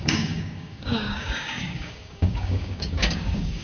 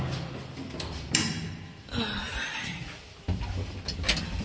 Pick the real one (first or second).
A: second